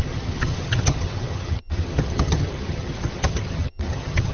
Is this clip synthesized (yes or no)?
yes